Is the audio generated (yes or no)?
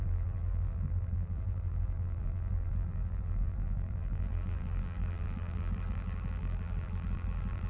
yes